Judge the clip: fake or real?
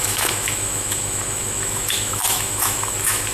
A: fake